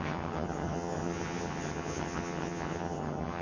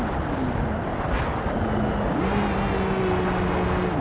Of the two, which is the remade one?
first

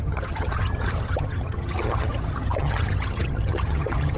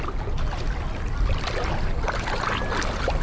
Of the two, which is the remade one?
first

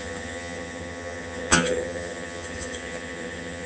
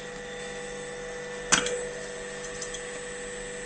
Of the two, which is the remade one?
first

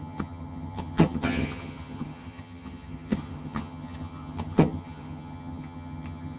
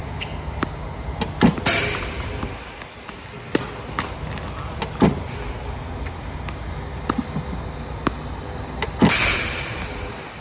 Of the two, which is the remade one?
first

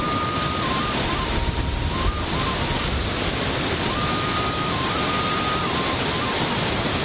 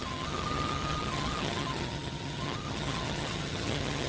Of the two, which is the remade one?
second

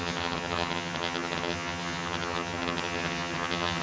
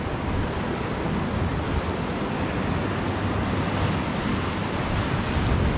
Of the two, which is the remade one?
first